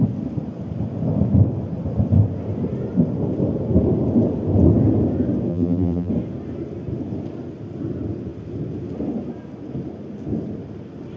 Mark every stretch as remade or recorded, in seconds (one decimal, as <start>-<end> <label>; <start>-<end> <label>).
0.0-5.5 recorded; 5.5-6.1 remade; 6.1-11.2 recorded